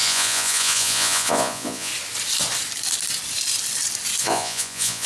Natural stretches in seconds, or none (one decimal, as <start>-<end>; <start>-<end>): 1.9-4.2